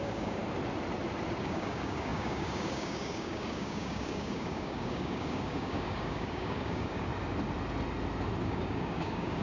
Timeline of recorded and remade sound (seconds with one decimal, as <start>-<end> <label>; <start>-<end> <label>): 0.0-0.4 remade; 0.4-1.4 recorded; 1.4-7.1 remade; 7.1-8.4 recorded; 8.4-9.4 remade